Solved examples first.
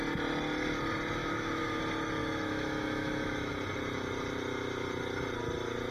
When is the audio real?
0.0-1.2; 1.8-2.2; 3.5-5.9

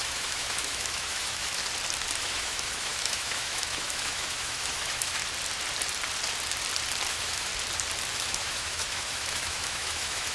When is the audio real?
1.6-2.2; 5.2-7.1; 7.5-8.1

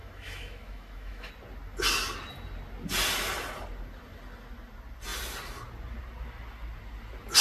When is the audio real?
1.3-7.4

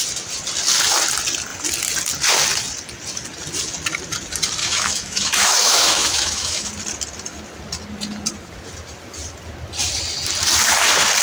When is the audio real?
0.0-4.6; 6.7-11.2

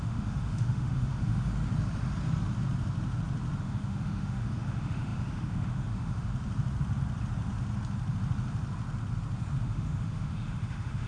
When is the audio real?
1.5-3.6; 6.3-9.6

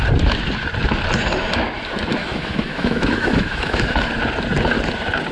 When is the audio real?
0.0-2.2; 4.1-5.3